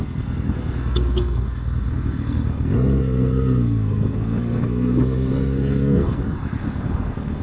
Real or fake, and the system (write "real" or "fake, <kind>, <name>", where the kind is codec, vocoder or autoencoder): fake, codec, SNAC